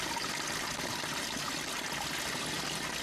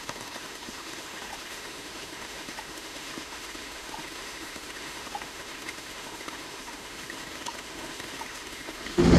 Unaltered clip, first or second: first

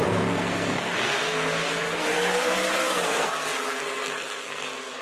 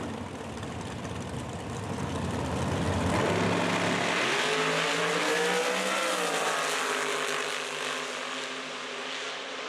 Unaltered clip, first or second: second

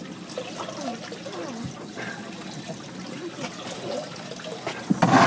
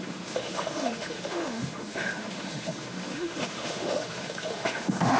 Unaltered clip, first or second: first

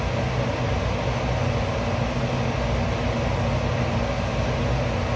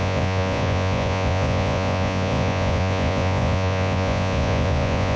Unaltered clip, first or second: first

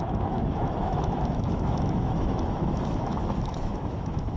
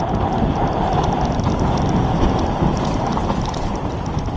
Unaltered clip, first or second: second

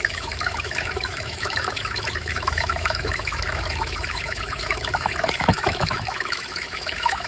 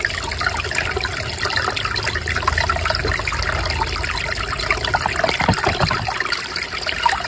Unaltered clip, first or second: second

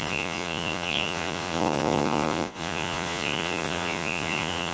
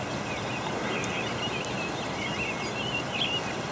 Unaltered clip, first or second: second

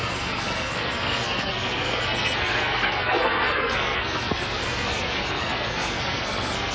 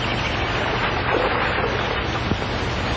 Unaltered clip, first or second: second